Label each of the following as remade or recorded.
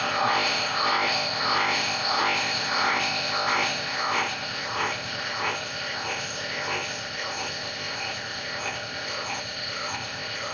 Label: remade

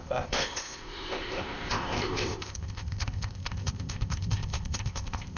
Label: remade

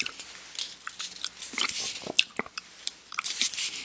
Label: recorded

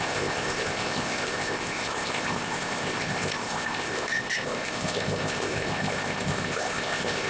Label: remade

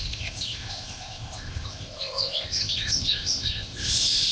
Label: remade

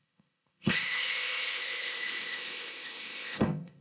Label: remade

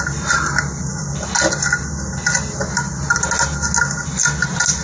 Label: recorded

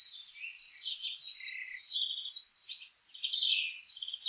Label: recorded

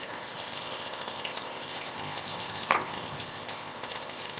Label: remade